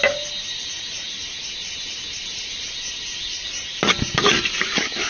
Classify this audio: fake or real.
real